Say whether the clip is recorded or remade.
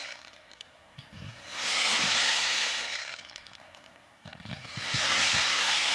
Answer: remade